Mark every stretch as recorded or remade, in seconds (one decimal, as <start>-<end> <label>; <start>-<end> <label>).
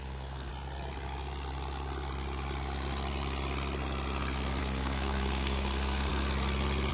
0.0-0.5 remade; 0.5-4.6 recorded; 4.6-6.1 remade; 6.1-6.9 recorded